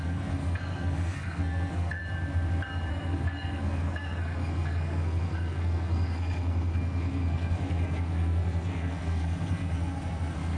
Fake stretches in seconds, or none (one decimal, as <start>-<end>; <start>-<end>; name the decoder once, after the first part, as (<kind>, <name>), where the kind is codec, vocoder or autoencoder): 0.0-2.0 (codec, SNAC); 2.9-10.6